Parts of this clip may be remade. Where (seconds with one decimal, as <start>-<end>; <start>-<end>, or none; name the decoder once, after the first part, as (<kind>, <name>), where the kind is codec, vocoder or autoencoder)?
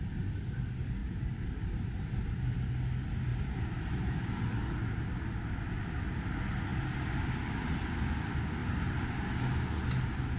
1.0-2.7 (vocoder, BigVGAN v2); 3.3-4.4; 8.6-9.2